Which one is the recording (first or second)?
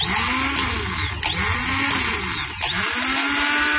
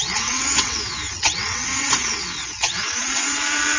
first